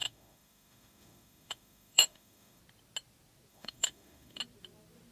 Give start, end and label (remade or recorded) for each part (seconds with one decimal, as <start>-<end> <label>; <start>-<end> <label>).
0.0-2.6 remade; 2.6-3.5 recorded; 3.5-4.4 remade; 4.4-5.1 recorded